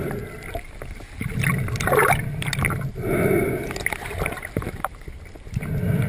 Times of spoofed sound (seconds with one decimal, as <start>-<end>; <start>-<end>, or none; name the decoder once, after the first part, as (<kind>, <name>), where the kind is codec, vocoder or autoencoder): none

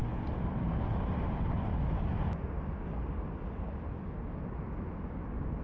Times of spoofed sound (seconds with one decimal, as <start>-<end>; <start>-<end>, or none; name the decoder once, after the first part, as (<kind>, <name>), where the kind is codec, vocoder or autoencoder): none

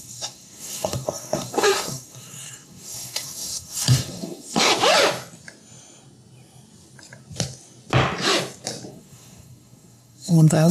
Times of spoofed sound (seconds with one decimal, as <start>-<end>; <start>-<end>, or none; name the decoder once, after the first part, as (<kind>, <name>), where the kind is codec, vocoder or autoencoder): 0.0-4.7 (codec, SNAC); 8.9-10.7

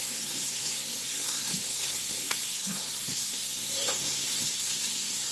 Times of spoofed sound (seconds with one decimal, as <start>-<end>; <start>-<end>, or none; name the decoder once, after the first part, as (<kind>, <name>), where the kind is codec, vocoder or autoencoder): 0.0-5.3 (codec, SNAC)

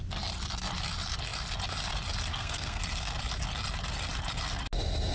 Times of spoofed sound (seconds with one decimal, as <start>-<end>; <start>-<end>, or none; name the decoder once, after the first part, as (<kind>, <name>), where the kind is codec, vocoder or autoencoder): 2.3-2.8 (codec, SNAC)

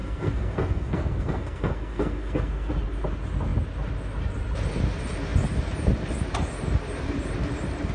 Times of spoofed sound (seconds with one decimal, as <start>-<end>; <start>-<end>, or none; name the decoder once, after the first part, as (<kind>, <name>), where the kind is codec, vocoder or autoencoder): 0.0-2.7 (codec, SNAC)

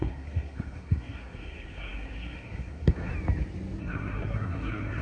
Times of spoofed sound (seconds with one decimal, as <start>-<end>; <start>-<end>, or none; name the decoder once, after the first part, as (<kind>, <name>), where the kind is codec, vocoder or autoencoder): 0.0-3.1 (codec, SNAC); 3.8-5.0

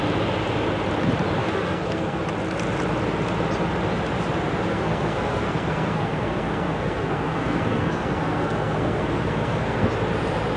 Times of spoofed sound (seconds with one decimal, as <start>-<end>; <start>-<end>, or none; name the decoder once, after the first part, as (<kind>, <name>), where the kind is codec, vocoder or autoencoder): 1.4-2.2 (codec, SNAC); 4.7-9.9